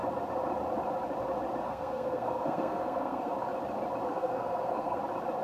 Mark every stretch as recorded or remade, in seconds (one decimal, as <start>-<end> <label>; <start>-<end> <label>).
0.0-1.6 recorded; 1.6-3.3 remade; 3.3-4.1 recorded; 4.1-5.0 remade; 5.0-5.4 recorded